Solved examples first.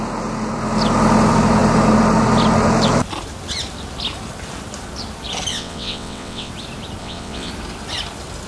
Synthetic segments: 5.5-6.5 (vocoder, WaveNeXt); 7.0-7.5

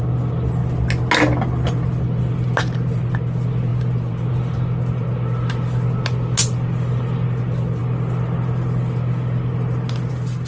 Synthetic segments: none